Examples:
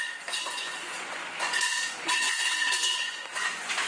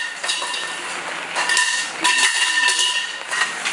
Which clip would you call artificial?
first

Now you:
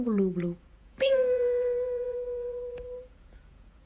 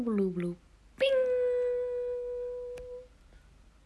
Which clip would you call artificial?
first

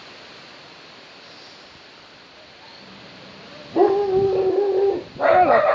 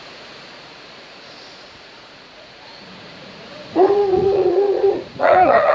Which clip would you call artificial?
second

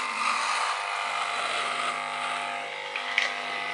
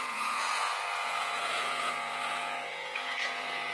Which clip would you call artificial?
second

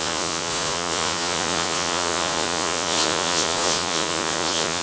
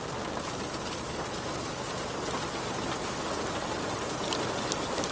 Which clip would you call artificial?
first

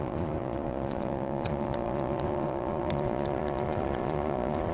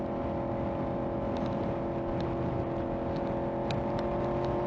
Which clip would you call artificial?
first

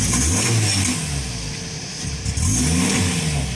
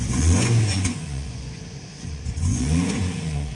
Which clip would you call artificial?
second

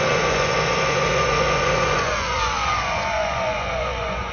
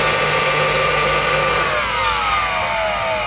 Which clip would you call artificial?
first